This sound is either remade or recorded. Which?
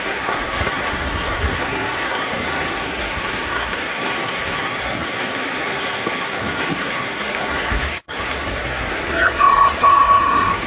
remade